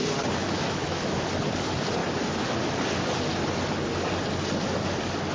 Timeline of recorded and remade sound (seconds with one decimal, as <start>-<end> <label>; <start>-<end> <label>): 0.0-0.4 recorded; 0.4-1.2 remade; 1.2-5.3 recorded